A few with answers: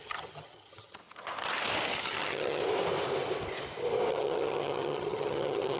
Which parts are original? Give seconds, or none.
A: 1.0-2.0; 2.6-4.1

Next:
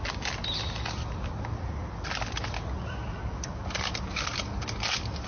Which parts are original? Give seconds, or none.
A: 0.0-5.3

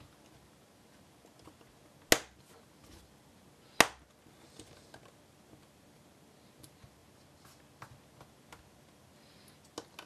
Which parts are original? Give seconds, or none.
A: 0.0-10.1

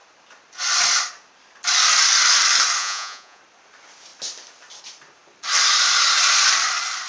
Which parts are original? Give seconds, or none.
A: 0.0-2.8; 3.4-7.1

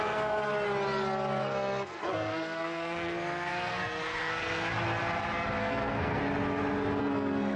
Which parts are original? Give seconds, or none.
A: 0.5-1.4; 4.7-5.6; 6.2-7.0

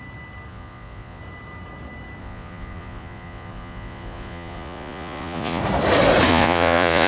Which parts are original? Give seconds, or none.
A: 0.0-0.5; 1.2-2.2; 5.6-6.3